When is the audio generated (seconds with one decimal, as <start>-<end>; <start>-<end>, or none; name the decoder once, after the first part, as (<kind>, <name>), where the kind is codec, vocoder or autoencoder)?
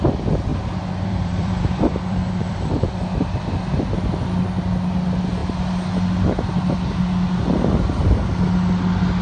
0.5-3.4 (vocoder, BigVGAN v2)